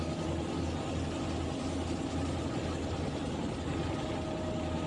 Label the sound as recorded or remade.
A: recorded